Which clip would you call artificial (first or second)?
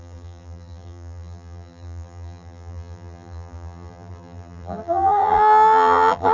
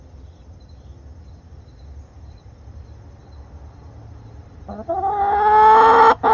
first